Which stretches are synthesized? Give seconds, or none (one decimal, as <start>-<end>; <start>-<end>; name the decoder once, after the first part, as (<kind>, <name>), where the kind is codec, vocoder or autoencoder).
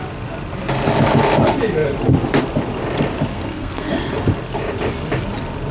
3.3-3.9 (codec, SNAC)